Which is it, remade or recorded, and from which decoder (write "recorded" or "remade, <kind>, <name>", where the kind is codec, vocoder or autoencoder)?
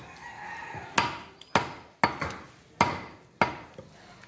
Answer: recorded